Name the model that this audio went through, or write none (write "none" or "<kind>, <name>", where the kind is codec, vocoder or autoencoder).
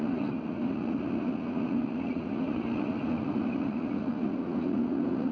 vocoder, Vocos